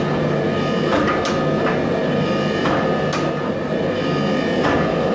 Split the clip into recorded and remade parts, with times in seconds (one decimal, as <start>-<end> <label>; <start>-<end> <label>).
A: 0.0-5.1 recorded